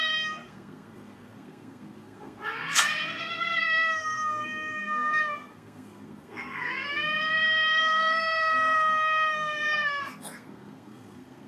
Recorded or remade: remade